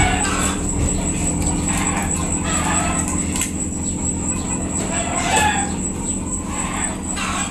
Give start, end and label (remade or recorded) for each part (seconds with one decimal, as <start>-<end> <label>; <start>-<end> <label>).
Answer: 0.0-7.5 recorded